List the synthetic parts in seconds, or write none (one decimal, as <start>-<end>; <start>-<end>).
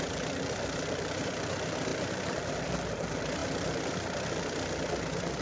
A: none